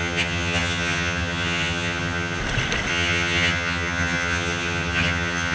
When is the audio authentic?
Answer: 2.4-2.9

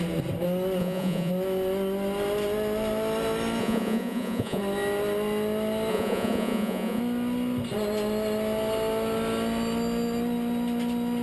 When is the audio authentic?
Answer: 0.0-0.8; 1.3-3.6; 4.6-5.9; 7.0-11.2